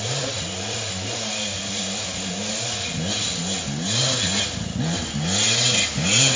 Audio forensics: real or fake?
real